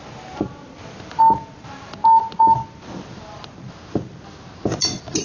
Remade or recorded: recorded